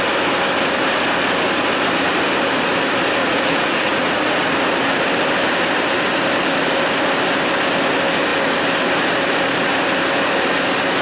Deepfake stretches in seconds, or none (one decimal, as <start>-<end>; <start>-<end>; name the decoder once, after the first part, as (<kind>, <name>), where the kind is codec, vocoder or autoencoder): 3.2-4.4 (vocoder, Vocos)